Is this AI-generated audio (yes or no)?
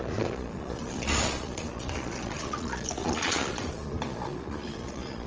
yes